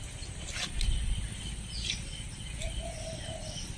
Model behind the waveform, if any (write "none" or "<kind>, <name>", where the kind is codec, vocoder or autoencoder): none